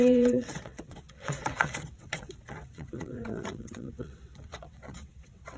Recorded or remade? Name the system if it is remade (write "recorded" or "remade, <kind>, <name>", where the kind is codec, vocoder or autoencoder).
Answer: remade, vocoder, WaveNeXt